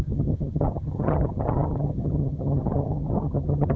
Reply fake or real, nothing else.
fake